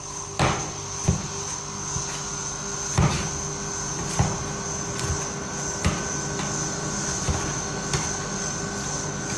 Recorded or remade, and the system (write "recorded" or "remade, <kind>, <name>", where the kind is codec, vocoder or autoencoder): recorded